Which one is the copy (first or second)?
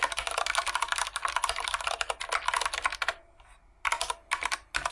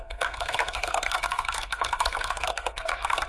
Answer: second